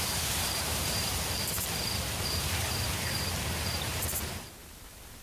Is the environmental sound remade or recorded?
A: remade